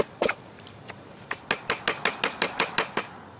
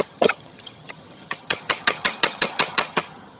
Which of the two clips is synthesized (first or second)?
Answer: second